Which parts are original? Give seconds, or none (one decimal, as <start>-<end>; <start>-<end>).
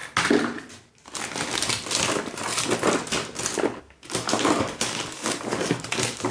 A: 0.0-3.8